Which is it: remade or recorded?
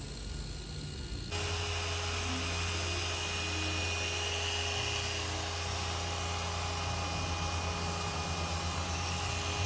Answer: recorded